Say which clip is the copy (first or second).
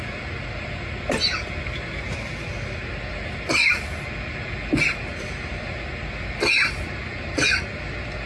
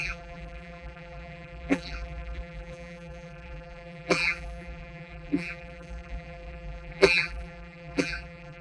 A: second